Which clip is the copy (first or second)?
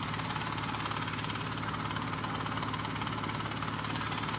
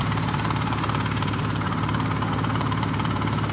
second